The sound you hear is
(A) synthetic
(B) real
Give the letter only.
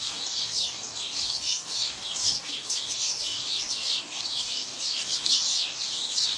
A